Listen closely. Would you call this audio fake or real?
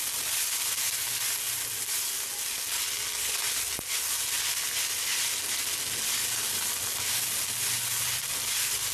real